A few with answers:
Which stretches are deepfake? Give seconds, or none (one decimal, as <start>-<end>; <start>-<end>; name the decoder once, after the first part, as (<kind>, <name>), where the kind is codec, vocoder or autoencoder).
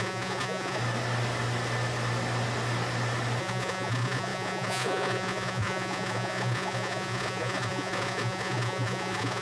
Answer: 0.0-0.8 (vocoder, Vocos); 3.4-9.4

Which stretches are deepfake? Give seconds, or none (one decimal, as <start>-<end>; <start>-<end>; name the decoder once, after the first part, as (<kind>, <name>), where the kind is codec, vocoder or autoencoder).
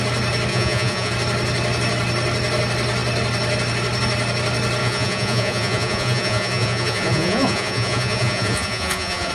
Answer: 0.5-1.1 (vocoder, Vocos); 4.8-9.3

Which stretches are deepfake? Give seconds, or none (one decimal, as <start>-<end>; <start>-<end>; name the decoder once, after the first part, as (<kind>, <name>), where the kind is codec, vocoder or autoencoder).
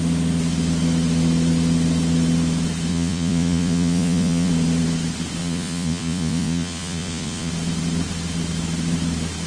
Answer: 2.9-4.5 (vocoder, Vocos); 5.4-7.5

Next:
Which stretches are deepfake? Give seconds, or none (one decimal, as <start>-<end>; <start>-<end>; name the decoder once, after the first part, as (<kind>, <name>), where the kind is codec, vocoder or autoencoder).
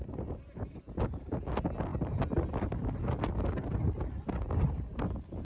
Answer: none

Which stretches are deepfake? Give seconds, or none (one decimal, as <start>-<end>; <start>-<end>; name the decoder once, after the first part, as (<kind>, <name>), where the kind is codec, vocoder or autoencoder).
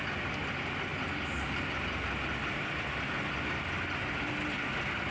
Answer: none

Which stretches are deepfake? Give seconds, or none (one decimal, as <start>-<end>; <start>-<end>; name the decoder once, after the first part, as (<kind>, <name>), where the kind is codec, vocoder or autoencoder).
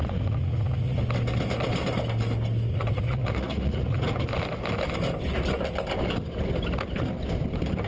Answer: 0.0-1.0 (vocoder, Vocos); 2.7-4.2